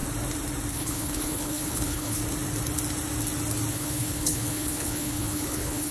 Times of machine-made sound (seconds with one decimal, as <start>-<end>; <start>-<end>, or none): 0.7-2.2; 3.7-5.9